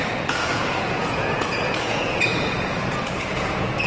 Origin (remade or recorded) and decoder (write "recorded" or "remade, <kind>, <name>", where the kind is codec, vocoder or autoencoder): remade, vocoder, Vocos